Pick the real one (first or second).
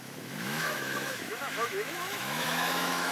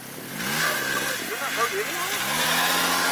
second